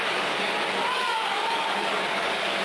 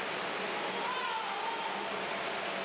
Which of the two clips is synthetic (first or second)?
first